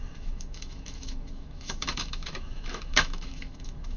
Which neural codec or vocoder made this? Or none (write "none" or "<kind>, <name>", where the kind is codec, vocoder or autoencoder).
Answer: autoencoder, DAC-VAE